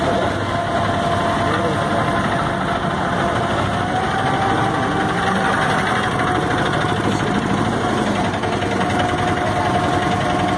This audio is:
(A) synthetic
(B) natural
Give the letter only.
B